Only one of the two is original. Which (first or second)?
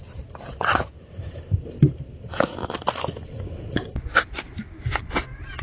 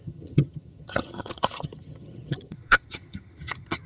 first